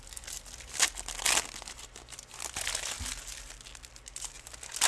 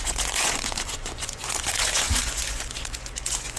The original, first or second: first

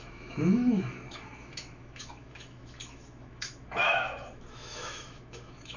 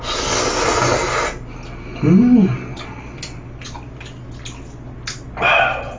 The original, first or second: second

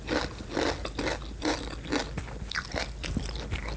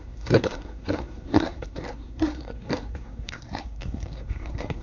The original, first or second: first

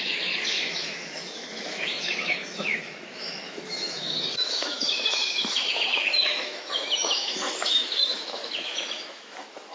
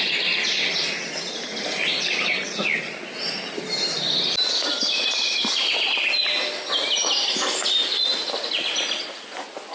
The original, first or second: second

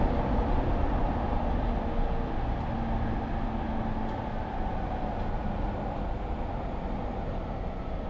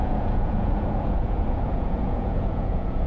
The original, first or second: first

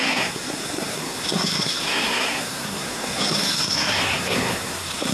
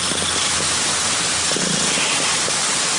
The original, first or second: second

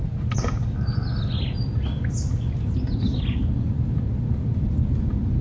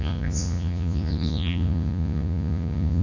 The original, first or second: first